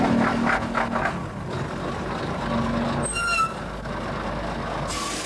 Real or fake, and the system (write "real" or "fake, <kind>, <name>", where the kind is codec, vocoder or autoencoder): real